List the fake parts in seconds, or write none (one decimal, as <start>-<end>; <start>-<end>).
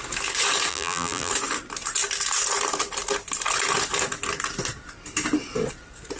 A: 0.7-1.3